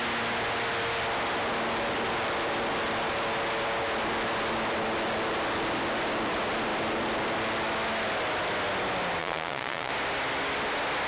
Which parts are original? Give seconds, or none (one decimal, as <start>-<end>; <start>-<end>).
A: 0.0-9.2; 9.9-11.1